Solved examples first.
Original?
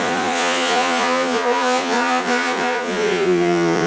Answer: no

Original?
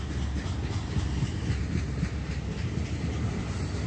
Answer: yes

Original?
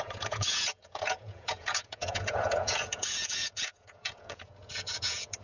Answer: no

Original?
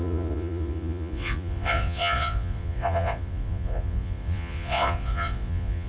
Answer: no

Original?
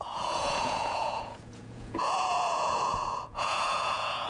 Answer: no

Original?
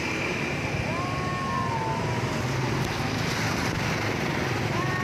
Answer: yes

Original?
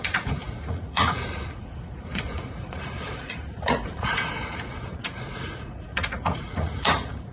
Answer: no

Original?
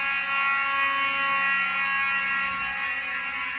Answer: yes